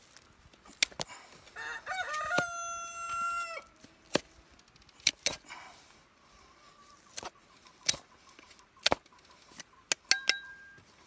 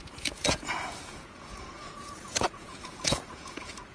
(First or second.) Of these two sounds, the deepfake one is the second